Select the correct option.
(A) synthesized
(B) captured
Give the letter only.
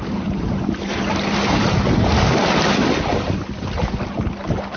B